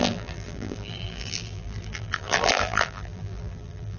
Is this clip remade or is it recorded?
remade